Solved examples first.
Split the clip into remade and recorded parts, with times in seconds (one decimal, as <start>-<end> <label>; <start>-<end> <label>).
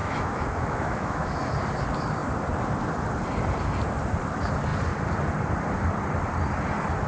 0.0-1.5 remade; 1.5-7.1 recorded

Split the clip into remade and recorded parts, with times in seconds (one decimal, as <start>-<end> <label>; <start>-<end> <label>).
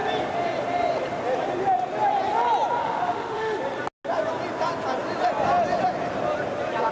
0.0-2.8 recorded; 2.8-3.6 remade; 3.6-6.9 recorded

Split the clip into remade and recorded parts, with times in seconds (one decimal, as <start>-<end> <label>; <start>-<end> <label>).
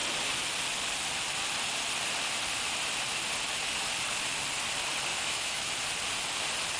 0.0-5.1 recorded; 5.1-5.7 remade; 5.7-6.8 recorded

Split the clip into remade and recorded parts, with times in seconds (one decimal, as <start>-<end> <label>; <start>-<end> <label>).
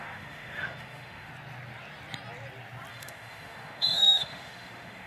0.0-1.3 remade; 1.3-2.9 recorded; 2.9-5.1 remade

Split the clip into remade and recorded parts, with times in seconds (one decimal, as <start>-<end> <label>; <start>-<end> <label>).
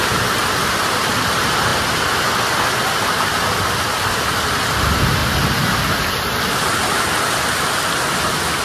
0.0-8.6 recorded